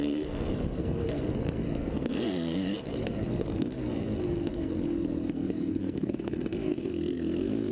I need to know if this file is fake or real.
fake